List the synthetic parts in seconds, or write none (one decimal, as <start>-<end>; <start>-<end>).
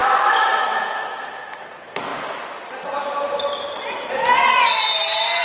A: 0.0-1.3